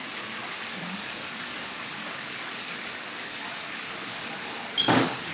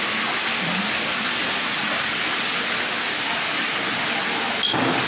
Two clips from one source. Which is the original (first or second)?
second